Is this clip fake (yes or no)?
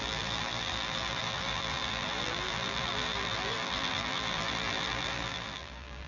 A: yes